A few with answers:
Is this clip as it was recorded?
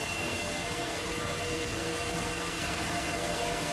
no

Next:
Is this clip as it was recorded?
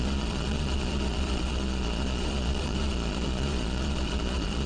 no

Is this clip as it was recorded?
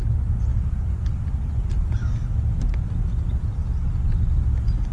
yes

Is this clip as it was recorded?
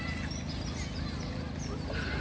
yes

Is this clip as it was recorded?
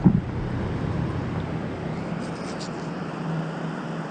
yes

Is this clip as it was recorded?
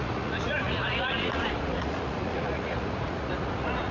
no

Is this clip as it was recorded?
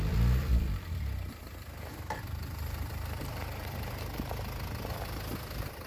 no